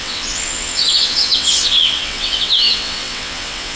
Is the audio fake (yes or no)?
yes